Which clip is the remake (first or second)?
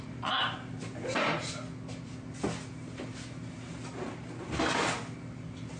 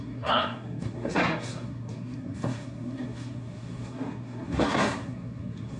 second